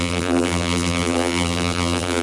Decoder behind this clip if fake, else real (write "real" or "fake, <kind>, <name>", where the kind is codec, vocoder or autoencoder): fake, vocoder, BigVGAN v2